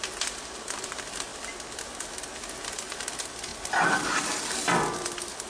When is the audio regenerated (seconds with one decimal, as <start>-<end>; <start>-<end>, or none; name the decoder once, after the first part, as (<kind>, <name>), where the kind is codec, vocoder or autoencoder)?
none